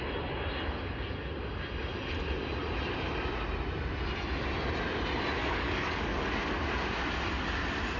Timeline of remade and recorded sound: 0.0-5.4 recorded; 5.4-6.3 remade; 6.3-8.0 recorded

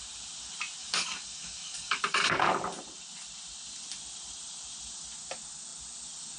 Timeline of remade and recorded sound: 0.0-0.8 recorded; 0.8-2.6 remade; 2.6-6.4 recorded

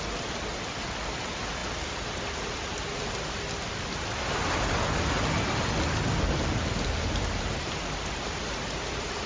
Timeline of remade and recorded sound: 0.0-9.3 recorded

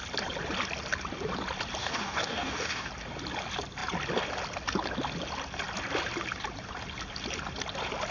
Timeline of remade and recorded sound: 0.0-1.8 recorded; 1.8-2.9 remade; 2.9-8.1 recorded

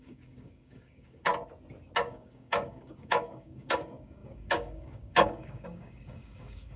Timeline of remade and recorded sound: 0.0-1.3 remade; 1.3-2.1 recorded; 2.1-6.8 remade

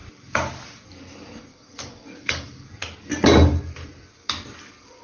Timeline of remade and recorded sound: 0.0-1.5 recorded; 1.5-2.7 remade; 2.7-5.0 recorded

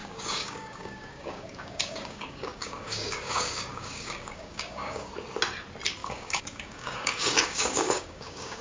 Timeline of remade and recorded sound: 0.0-5.1 remade; 5.1-6.0 recorded; 6.0-8.6 remade